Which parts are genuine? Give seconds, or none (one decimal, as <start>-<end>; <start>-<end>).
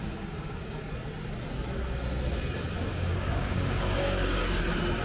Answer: 0.9-2.9; 4.6-5.0